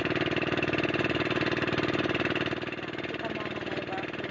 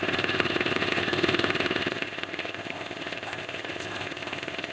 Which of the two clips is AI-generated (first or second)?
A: second